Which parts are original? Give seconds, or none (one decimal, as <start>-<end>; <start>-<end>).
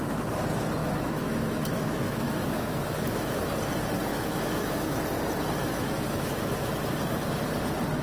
0.0-0.8; 3.4-4.1; 5.0-5.6; 6.7-8.0